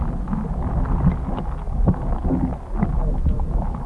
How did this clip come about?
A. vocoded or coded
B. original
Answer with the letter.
B